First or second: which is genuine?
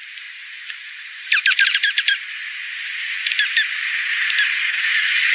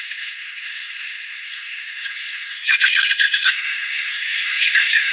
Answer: first